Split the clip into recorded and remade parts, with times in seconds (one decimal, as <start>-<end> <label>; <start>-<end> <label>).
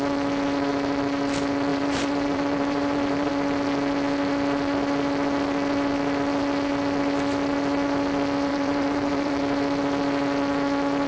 0.0-1.7 recorded; 1.7-3.3 remade; 3.3-8.5 recorded; 8.5-9.4 remade; 9.4-11.1 recorded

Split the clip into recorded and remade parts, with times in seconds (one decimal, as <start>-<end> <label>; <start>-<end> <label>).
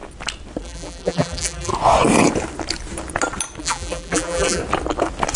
0.0-0.6 recorded; 0.6-1.7 remade; 1.7-3.6 recorded; 3.6-4.6 remade; 4.6-5.4 recorded